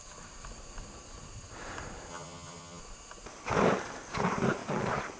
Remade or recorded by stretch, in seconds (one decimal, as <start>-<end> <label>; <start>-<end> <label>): 0.0-2.1 recorded; 2.1-2.8 remade; 2.8-5.2 recorded